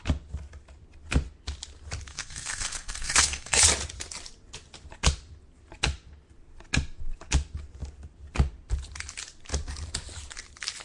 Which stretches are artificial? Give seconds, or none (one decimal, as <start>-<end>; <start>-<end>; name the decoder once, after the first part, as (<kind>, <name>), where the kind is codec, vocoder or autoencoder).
2.1-3.6 (codec, SNAC)